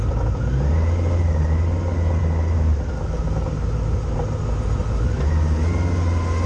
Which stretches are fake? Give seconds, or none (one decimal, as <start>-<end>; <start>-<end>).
none